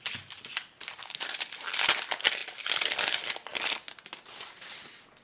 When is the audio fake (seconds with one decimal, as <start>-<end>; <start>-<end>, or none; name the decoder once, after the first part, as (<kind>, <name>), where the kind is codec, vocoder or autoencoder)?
none